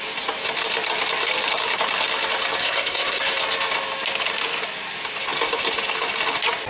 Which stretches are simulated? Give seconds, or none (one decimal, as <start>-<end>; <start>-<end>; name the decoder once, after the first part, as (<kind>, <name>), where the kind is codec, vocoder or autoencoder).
2.6-3.2 (codec, SNAC)

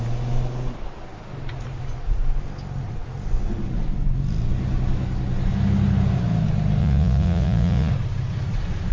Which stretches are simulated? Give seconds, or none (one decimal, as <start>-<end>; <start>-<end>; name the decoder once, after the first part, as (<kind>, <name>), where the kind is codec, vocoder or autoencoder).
6.8-7.9 (vocoder, Vocos)

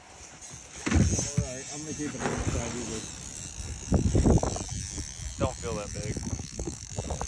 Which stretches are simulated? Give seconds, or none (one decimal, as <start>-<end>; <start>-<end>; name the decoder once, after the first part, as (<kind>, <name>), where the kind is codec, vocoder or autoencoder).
6.3-6.8 (codec, SNAC)

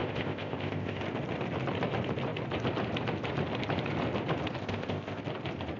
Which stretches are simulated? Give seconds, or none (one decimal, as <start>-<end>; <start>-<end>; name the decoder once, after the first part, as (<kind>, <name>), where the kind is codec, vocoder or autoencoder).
0.0-1.0 (codec, ZipCodec); 4.6-5.2

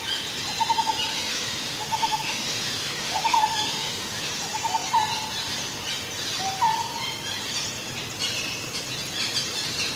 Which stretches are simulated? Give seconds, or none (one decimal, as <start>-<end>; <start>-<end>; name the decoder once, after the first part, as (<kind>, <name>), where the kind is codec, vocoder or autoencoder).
1.1-4.3 (autoencoder, DAC-VAE)

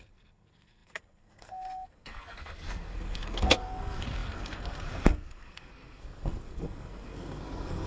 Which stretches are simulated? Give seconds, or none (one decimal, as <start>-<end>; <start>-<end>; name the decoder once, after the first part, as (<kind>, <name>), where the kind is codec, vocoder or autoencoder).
0.0-7.9 (codec, SNAC)

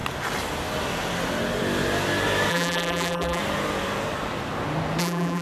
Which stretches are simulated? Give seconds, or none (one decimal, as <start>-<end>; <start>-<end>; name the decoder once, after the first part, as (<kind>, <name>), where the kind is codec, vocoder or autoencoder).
2.5-3.4 (vocoder, BigVGAN v2); 5.0-5.4

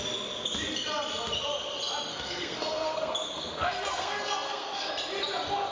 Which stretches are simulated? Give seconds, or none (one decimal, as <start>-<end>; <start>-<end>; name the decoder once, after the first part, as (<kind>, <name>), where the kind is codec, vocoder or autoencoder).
2.1-4.9 (codec, SNAC)